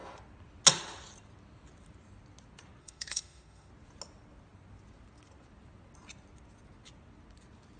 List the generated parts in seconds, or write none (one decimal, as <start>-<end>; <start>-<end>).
2.8-3.7